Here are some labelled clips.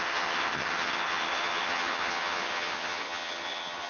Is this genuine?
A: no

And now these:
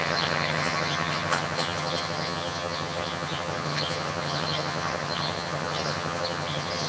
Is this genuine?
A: no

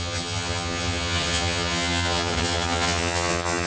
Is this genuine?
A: no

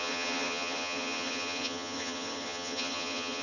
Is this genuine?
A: no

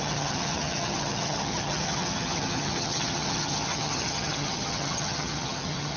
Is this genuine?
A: no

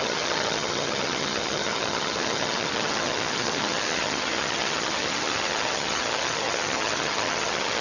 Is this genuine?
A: no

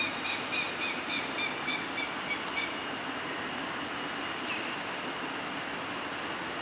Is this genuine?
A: yes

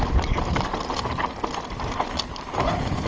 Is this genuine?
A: yes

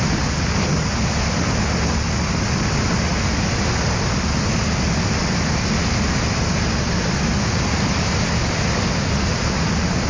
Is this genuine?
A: yes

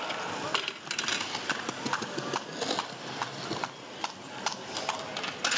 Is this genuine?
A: yes